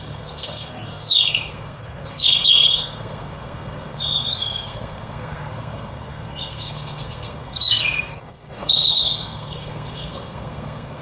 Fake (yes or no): yes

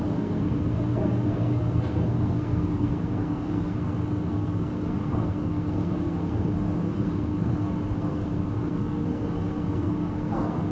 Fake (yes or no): yes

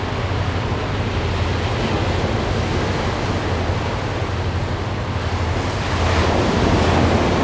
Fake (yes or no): no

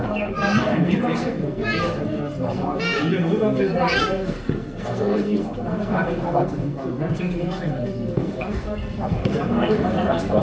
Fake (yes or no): yes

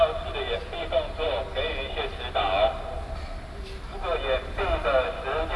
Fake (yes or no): no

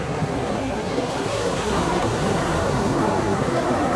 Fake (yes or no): yes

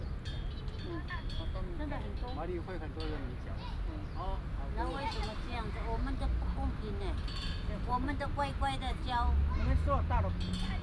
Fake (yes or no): no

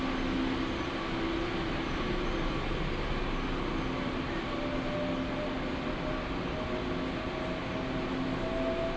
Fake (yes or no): no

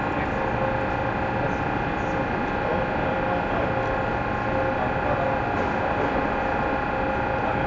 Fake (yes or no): no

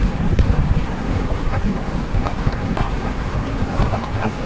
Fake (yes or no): yes